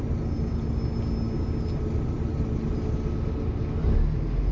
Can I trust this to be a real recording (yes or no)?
yes